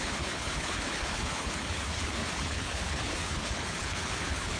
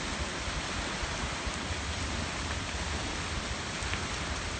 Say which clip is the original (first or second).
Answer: second